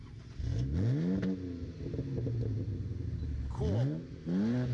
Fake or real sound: real